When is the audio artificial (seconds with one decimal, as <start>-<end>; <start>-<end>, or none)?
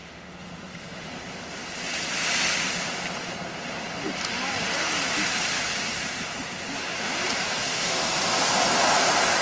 0.0-1.1; 7.6-8.2